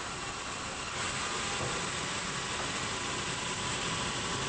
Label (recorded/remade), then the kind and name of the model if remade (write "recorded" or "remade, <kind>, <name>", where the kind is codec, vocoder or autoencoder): recorded